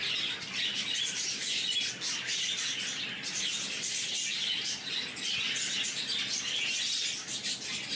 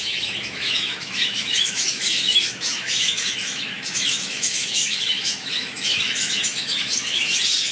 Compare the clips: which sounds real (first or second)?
first